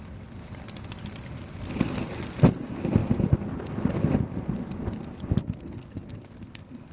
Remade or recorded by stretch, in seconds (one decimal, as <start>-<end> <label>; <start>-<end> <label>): 0.0-5.4 recorded; 5.4-6.9 remade